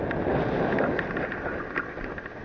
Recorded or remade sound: recorded